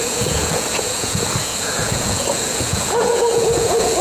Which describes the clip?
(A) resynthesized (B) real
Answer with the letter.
A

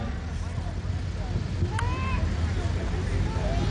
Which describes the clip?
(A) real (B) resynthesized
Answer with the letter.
A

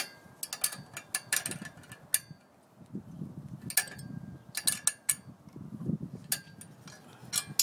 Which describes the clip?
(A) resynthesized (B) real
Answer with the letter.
B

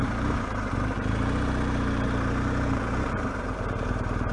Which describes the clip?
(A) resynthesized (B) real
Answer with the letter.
A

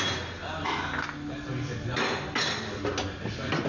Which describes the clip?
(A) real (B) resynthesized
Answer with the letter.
A